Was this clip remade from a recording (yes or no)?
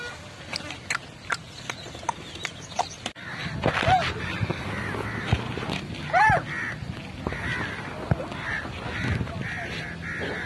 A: no